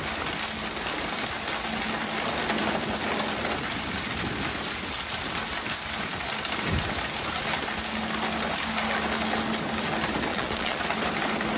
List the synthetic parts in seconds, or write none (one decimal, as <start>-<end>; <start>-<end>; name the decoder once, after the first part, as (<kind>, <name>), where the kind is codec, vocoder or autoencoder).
10.3-10.8 (vocoder, Vocos)